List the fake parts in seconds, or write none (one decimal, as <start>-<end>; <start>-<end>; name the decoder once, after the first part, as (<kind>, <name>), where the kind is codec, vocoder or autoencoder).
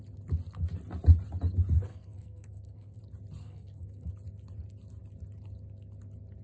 1.9-3.0 (codec, SNAC); 3.4-4.1